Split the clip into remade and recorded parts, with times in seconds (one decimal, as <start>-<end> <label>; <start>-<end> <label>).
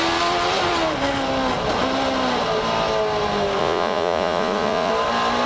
0.0-3.6 recorded; 3.6-4.9 remade; 4.9-5.5 recorded